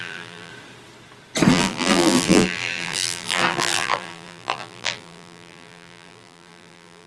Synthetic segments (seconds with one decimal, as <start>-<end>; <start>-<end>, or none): 0.0-0.5; 1.5-7.1